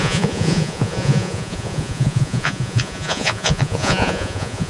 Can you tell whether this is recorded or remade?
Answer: remade